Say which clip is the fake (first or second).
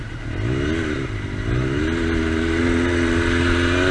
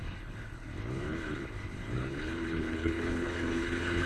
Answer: second